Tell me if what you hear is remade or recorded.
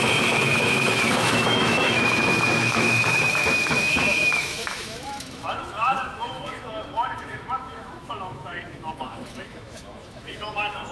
remade